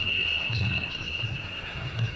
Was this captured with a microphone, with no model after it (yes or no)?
no